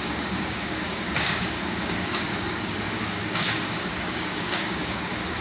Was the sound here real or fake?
fake